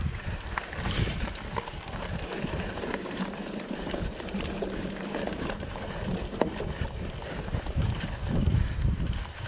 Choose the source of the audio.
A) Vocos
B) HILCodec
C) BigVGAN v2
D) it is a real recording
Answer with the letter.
C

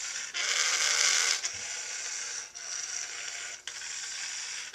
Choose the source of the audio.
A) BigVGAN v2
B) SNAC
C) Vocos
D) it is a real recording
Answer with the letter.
D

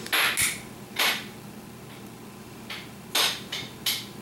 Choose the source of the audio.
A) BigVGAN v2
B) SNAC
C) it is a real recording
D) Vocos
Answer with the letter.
C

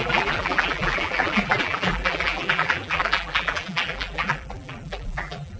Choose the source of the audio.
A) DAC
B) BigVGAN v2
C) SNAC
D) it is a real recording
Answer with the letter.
B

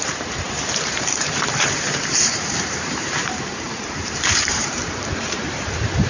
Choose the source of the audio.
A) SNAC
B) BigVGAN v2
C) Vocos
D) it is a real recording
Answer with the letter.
B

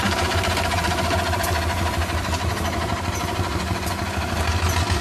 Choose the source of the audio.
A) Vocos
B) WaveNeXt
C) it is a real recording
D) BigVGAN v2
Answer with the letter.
C